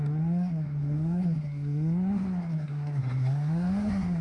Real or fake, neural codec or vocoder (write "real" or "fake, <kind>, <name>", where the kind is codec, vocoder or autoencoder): fake, codec, SNAC